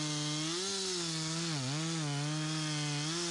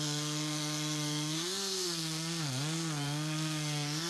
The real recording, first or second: first